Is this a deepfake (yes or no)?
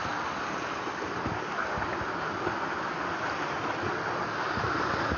no